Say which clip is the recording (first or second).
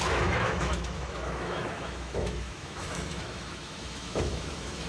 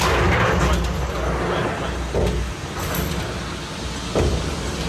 second